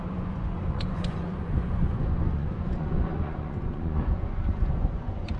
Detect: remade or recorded remade